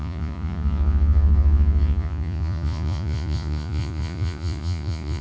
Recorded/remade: remade